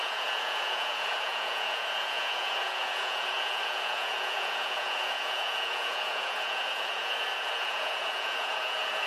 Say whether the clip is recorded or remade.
remade